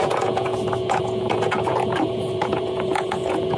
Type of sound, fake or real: fake